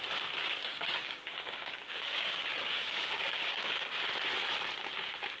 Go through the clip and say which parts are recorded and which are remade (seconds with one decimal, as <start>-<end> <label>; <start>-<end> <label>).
0.0-0.6 recorded; 0.6-3.7 remade; 3.7-5.4 recorded